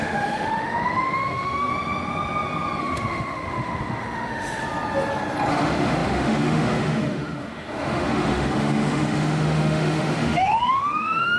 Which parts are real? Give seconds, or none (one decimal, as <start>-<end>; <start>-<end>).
1.7-2.8; 4.6-5.5